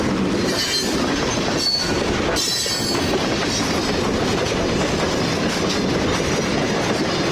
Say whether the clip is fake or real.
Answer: real